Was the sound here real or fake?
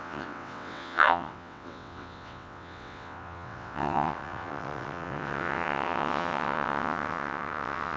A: fake